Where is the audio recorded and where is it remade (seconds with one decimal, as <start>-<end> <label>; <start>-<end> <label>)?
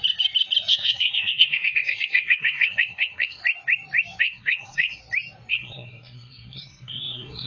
0.0-0.7 recorded; 0.7-3.4 remade; 3.4-4.2 recorded; 4.2-5.0 remade; 5.0-5.5 recorded; 5.5-7.5 remade